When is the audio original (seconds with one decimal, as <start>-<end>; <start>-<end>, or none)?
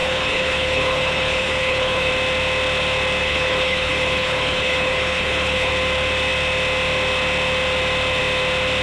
2.1-3.2; 5.7-8.8